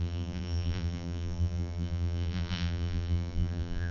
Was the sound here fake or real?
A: fake